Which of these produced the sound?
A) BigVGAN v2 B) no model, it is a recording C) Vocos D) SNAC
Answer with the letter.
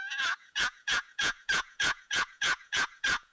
C